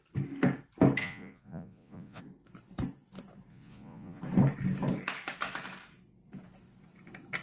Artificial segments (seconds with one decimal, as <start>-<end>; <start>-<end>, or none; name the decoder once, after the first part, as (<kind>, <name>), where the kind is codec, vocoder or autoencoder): 1.0-2.2 (vocoder, Vocos); 3.5-4.2